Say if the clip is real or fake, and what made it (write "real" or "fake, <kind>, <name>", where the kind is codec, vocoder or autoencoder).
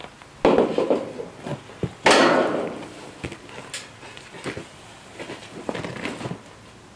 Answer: real